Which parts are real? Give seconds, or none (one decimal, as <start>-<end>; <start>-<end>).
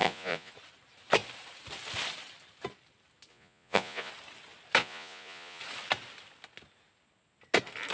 0.5-3.3; 4.1-4.8; 5.6-7.9